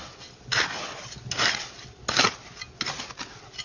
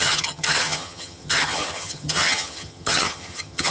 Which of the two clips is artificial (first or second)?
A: second